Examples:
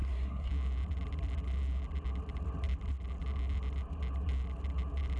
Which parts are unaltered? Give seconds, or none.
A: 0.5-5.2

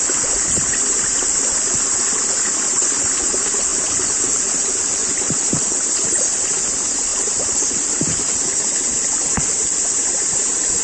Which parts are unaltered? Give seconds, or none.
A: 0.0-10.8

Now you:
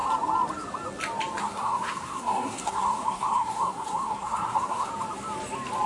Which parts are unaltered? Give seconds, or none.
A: 0.0-1.4; 4.9-5.9